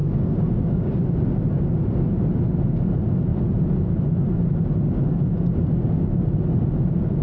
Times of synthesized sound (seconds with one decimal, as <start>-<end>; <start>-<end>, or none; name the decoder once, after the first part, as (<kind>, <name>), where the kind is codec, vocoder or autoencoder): 0.0-0.9 (codec, DAC)